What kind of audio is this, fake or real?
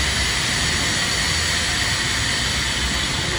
real